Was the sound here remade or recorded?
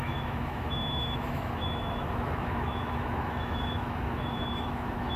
remade